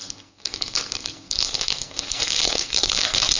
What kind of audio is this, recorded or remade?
remade